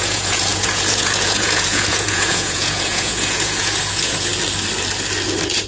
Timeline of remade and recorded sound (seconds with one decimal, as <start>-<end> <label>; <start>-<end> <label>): 0.0-4.3 remade; 4.3-5.7 recorded